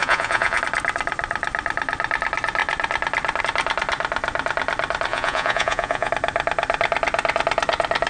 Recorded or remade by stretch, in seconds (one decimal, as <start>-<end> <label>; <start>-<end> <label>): 0.0-0.6 remade; 0.6-5.1 recorded; 5.1-6.1 remade; 6.1-8.1 recorded